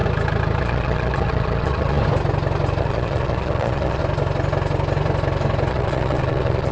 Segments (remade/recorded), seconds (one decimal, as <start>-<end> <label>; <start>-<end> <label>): 0.0-0.6 recorded; 0.6-2.0 remade; 2.0-2.8 recorded; 2.8-4.0 remade; 4.0-5.7 recorded; 5.7-6.7 remade